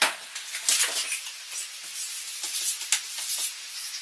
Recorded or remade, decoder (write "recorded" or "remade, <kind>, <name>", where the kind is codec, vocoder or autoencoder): recorded